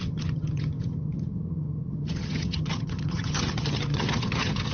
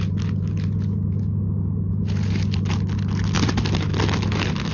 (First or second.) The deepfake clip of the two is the first